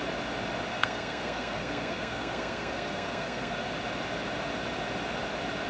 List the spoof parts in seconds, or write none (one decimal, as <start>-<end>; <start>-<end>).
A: 0.7-3.7

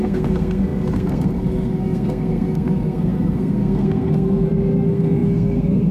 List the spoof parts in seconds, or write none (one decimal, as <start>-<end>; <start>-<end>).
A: 0.0-5.9